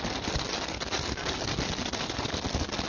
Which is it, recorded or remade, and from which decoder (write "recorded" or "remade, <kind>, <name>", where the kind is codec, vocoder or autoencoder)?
recorded